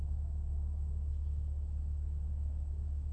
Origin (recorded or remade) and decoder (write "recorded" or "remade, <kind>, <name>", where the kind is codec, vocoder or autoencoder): remade, autoencoder, DAC-VAE